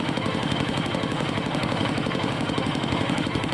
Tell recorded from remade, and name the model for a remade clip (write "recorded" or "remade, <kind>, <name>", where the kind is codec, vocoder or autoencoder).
remade, autoencoder, DAC-VAE